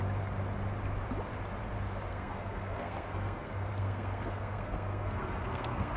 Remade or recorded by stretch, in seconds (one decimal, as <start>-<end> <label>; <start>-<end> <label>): 0.0-2.1 recorded; 2.1-6.0 remade